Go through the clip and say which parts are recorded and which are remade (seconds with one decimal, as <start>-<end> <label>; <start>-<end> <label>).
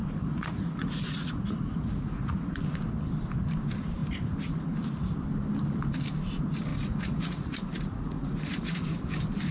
0.0-2.6 remade; 2.6-6.7 recorded; 6.7-8.8 remade; 8.8-9.5 recorded